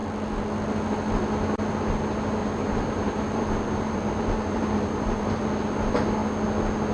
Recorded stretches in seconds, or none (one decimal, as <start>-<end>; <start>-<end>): 0.0-2.4; 5.4-6.9